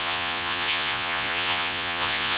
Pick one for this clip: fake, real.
fake